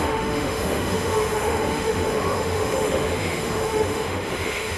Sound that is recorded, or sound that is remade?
remade